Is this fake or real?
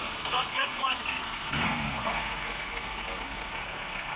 fake